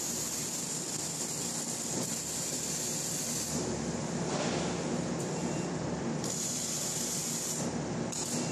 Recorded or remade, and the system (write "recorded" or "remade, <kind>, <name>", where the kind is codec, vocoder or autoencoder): remade, vocoder, BigVGAN v2